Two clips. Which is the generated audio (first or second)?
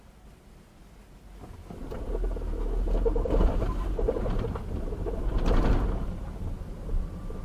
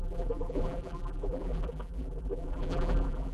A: second